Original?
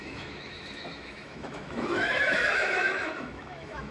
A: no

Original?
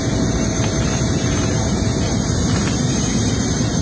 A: yes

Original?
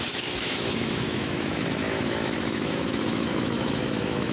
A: no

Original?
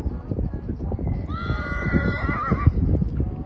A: yes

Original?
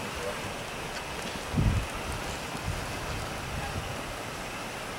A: yes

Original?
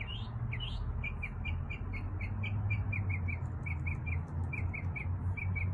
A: yes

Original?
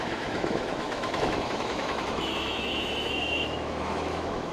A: no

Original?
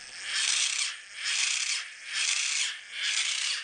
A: yes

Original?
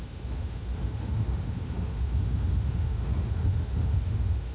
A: no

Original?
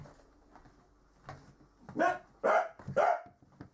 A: yes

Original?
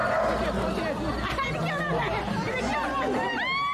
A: yes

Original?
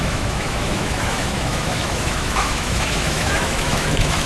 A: no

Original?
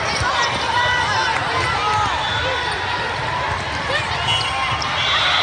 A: yes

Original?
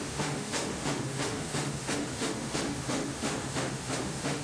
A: no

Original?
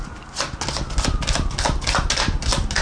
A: yes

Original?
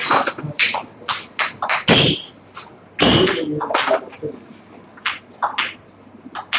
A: yes